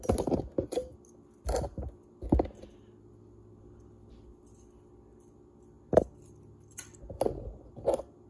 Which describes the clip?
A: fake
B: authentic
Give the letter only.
B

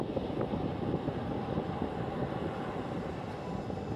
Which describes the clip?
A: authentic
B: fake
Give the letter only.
A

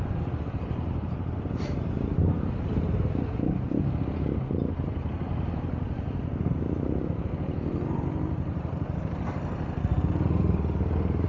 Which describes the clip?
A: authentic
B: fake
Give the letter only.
B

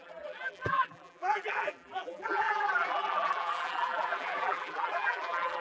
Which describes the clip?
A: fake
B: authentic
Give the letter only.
A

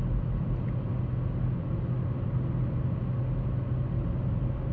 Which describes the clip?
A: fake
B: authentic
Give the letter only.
B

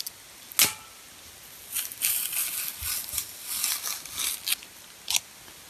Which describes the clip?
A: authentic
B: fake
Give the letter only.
A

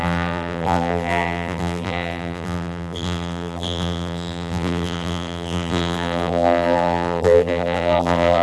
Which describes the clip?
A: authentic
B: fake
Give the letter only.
B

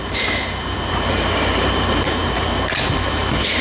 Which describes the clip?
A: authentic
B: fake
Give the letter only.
B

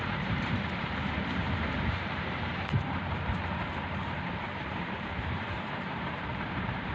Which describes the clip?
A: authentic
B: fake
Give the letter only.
B